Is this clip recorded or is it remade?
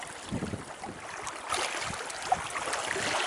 recorded